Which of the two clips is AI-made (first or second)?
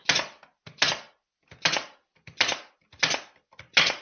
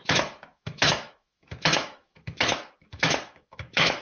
second